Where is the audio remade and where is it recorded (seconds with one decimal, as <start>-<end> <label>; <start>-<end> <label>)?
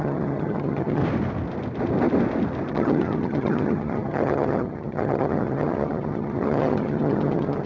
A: 0.0-1.0 remade; 1.0-2.7 recorded; 2.7-7.7 remade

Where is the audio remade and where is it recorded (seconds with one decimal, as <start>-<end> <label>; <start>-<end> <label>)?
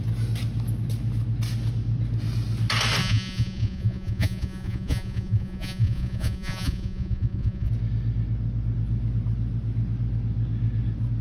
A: 0.0-3.0 recorded; 3.0-7.7 remade; 7.7-11.2 recorded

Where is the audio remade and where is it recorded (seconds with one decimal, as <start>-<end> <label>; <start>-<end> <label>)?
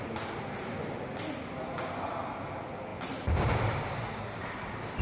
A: 0.0-5.0 recorded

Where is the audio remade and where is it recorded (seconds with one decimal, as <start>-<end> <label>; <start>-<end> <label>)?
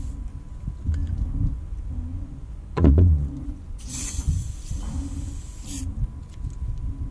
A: 0.0-2.1 recorded; 2.1-4.5 remade; 4.5-7.1 recorded